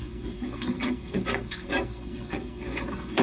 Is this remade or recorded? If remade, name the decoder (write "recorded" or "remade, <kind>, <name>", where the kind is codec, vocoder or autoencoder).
remade, codec, SNAC